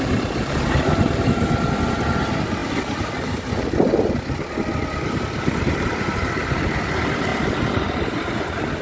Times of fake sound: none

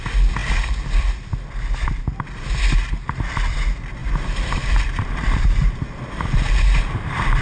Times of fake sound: 4.0-7.4 (vocoder, BigVGAN v2)

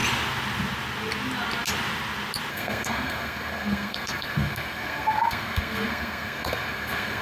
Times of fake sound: 2.5-7.2 (codec, SNAC)

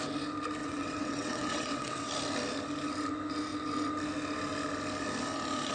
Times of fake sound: 0.6-2.1 (vocoder, WaveNeXt)

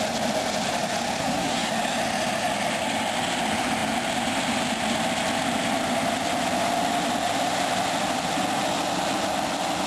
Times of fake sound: 1.2-1.7 (codec, SNAC)

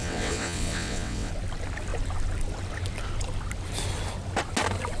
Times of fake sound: 0.0-1.3 (vocoder, WaveNeXt)

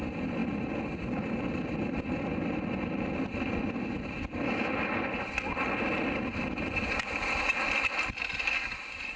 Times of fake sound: none